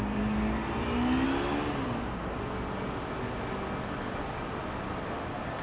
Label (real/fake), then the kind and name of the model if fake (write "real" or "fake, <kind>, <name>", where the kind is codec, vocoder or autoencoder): real